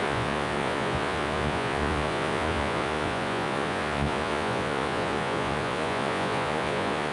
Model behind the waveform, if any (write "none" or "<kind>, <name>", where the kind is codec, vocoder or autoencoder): vocoder, Vocos